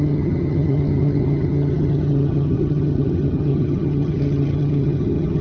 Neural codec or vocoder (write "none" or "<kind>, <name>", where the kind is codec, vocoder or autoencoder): vocoder, HiFi-GAN